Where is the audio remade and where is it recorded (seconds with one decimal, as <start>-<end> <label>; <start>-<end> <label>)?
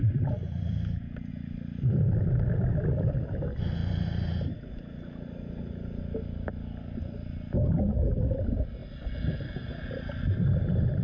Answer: 0.0-0.4 recorded; 0.4-1.3 remade; 1.3-3.8 recorded; 3.8-6.0 remade; 6.0-11.0 recorded